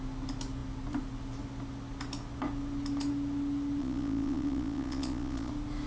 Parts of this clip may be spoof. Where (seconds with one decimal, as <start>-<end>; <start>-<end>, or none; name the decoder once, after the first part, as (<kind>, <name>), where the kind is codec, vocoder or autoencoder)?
3.8-5.5 (vocoder, Vocos)